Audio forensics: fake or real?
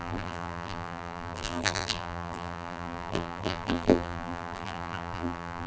fake